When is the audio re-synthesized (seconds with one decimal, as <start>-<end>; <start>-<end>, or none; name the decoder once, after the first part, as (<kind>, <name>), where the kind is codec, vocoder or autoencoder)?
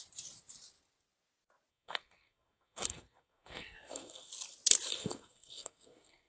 1.7-4.3 (codec, SNAC); 4.9-6.3